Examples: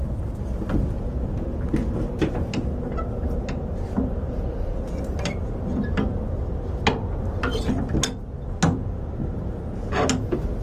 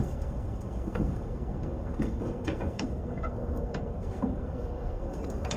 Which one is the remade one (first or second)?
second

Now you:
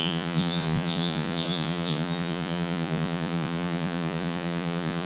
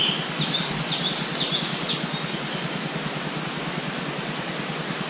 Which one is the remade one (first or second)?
first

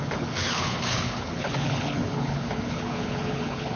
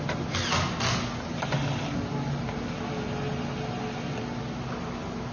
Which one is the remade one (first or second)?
first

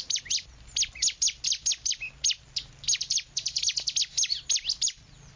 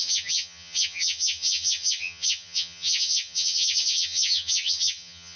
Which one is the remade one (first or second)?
second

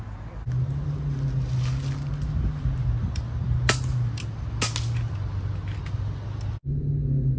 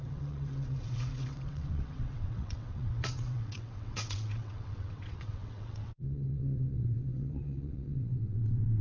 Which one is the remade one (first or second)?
second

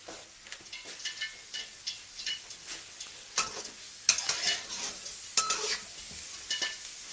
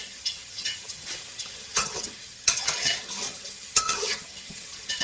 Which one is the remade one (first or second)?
second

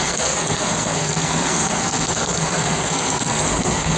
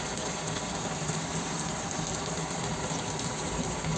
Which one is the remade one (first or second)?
first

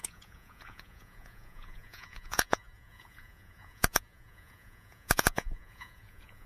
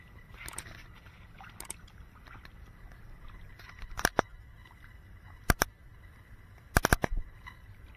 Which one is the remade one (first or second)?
first